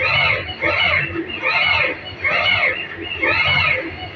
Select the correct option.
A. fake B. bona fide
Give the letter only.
B